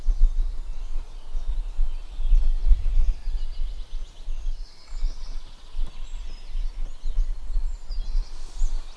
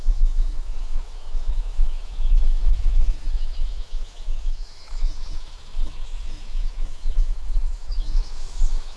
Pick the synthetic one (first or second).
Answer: second